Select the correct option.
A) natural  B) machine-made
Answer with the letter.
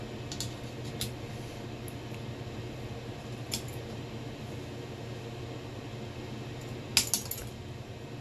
A